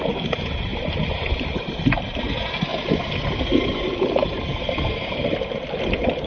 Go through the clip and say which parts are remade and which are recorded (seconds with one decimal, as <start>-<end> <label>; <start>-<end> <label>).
0.0-0.7 recorded; 0.7-1.3 remade; 1.3-6.3 recorded